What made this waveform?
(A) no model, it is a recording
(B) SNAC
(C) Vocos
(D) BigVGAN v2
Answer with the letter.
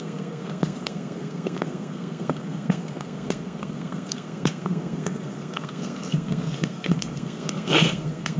B